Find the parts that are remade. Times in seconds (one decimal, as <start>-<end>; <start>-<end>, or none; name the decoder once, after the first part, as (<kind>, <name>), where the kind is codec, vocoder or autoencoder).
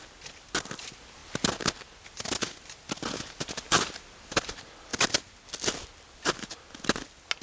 none